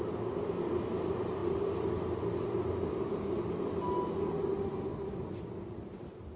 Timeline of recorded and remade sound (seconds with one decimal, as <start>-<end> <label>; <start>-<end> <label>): 0.0-4.9 recorded; 4.9-6.4 remade